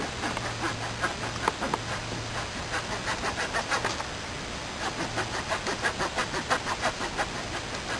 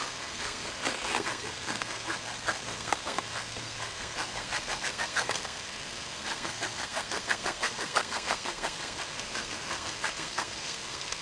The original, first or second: first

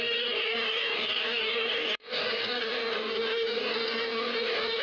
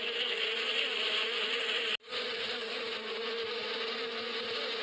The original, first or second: second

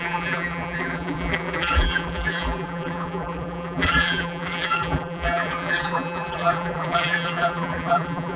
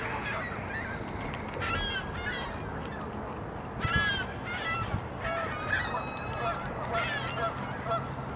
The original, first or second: second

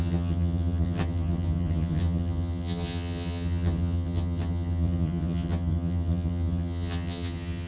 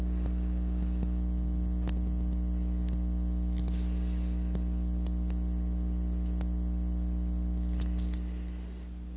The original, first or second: second